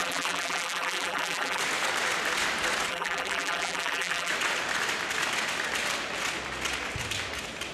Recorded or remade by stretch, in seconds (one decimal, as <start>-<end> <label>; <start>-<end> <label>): 0.0-1.6 remade; 1.6-2.9 recorded; 2.9-4.3 remade; 4.3-7.7 recorded